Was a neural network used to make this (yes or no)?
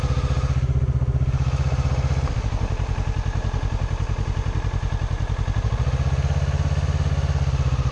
no